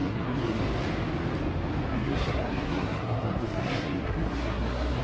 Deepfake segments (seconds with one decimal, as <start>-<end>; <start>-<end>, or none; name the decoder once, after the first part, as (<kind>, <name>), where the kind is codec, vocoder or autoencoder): 0.0-0.6 (codec, SNAC); 1.9-5.0